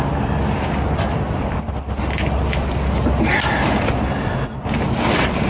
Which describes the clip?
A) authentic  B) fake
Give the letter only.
A